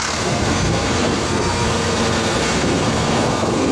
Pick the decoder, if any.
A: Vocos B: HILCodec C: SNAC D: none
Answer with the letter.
C